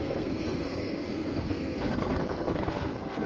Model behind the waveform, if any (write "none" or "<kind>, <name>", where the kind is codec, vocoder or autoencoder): codec, SNAC